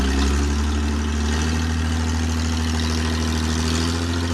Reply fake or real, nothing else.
real